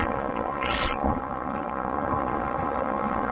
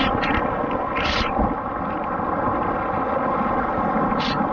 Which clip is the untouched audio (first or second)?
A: second